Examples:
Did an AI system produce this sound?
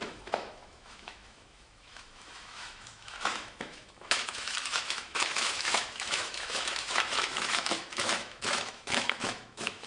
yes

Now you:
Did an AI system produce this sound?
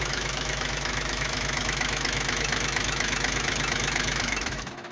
yes